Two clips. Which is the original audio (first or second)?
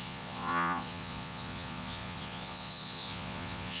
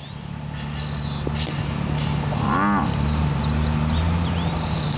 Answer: second